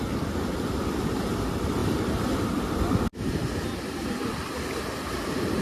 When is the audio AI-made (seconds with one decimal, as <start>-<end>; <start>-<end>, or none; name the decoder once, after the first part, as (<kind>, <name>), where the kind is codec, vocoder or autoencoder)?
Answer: none